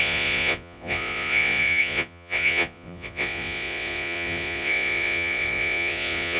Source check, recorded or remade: remade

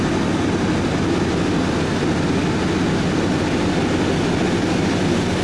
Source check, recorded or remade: recorded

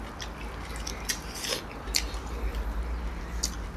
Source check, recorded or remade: recorded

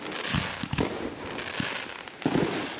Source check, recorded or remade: recorded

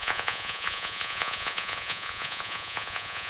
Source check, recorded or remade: remade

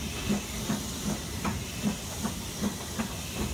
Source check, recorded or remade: recorded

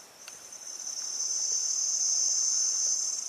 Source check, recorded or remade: recorded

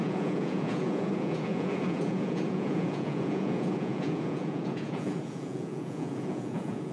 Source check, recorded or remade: remade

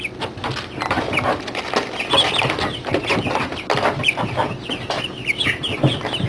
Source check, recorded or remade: recorded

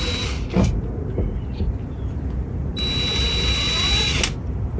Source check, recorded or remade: recorded